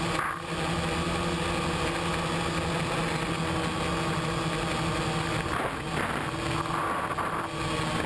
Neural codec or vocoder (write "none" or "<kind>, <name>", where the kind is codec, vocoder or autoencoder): none